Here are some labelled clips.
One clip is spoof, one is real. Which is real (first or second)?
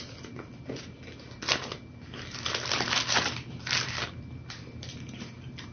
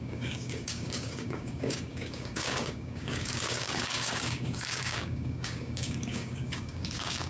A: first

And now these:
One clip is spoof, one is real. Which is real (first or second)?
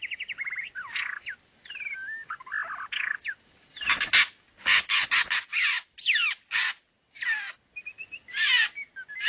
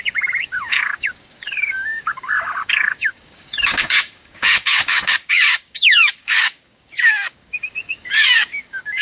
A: first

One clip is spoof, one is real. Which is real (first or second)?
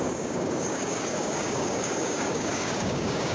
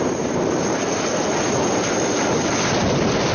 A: second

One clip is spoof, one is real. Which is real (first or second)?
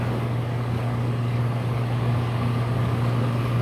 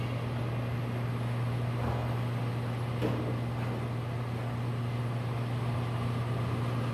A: second